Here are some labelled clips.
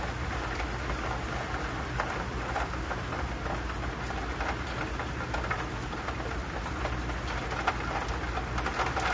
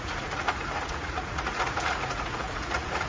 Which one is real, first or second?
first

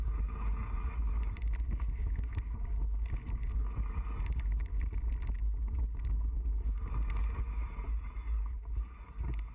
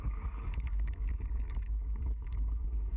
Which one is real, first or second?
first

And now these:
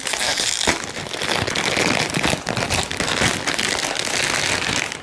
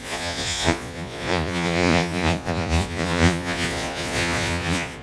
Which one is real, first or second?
first